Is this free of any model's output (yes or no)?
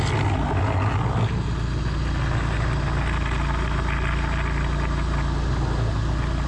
yes